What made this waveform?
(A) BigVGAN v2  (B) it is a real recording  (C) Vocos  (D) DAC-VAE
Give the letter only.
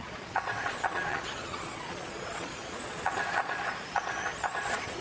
C